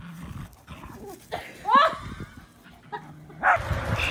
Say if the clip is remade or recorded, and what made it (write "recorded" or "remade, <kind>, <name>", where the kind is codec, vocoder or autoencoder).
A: recorded